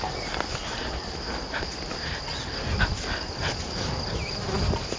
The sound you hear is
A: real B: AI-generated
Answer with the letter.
A